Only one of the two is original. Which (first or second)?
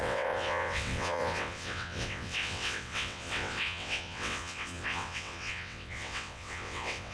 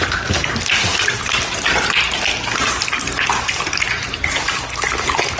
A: second